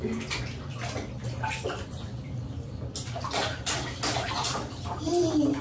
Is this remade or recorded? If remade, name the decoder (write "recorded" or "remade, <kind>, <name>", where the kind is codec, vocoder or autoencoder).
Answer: recorded